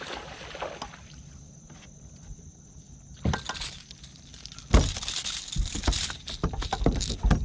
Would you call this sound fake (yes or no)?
no